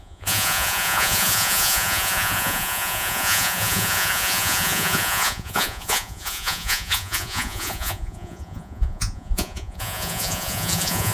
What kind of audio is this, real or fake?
fake